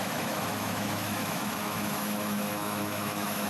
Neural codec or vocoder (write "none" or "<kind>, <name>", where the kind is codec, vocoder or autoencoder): autoencoder, DAC-VAE